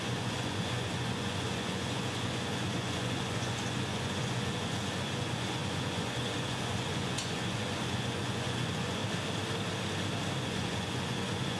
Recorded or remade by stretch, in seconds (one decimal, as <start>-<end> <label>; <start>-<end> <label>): 0.0-9.0 remade; 9.0-10.4 recorded; 10.4-11.6 remade